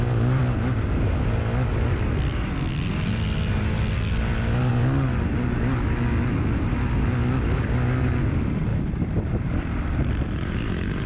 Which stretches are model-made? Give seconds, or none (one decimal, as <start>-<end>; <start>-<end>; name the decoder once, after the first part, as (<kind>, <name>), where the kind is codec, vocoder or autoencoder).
none